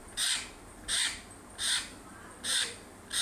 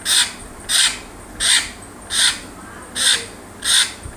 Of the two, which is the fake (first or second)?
first